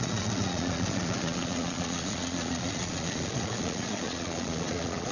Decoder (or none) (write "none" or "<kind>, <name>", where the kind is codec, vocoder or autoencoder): vocoder, Vocos